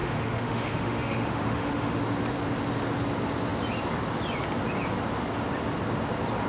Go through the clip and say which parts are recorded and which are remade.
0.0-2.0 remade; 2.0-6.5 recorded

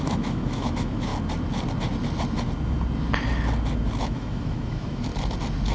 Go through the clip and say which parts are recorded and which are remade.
0.0-1.1 remade; 1.1-4.0 recorded; 4.0-5.1 remade; 5.1-5.7 recorded